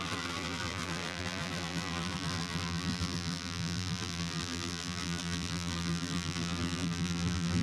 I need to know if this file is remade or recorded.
remade